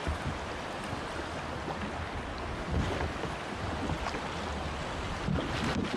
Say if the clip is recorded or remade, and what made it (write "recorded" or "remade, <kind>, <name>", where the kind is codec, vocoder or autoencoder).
recorded